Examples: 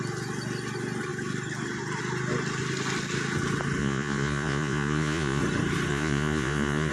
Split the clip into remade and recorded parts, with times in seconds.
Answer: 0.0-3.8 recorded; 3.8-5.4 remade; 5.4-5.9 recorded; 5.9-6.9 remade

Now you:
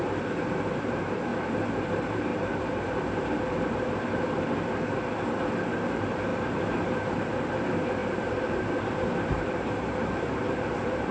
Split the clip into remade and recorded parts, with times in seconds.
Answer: 0.0-11.1 remade